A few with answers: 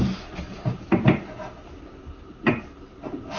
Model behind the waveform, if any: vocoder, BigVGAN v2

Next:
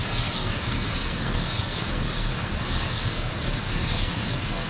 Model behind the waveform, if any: codec, SNAC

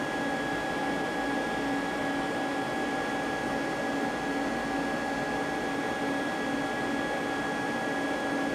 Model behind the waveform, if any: none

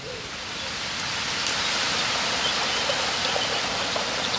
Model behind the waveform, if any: none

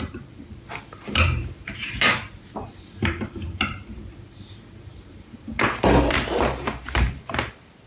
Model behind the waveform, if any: vocoder, BigVGAN v2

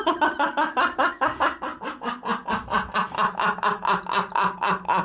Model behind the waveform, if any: none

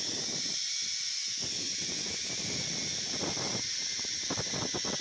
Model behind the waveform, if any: none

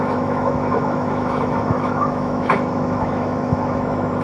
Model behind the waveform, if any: autoencoder, DAC-VAE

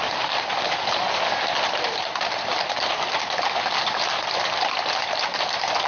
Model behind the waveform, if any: none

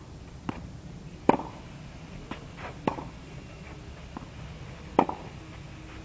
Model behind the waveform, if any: none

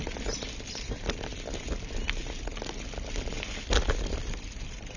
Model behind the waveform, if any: none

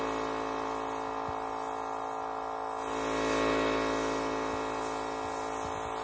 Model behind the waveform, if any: none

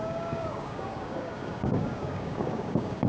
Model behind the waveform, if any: codec, DAC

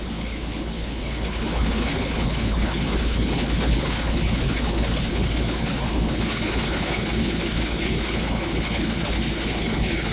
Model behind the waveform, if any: codec, HILCodec